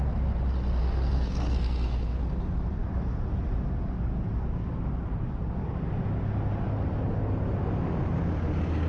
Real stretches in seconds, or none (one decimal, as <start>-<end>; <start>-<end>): 0.0-0.8; 2.2-8.9